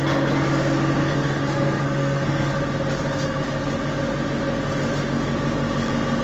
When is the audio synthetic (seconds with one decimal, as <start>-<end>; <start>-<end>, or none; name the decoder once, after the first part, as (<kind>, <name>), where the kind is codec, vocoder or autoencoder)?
1.0-2.5 (codec, SNAC)